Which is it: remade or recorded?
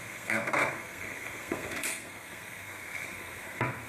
remade